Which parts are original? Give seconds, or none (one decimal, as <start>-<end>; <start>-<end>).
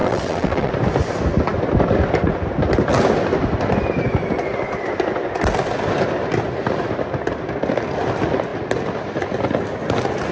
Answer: 0.7-10.3